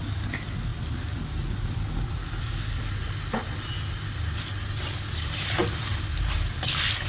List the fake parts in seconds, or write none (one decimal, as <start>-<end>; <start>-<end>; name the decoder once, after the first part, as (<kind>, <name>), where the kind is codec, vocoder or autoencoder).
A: 2.2-2.8 (codec, DAC)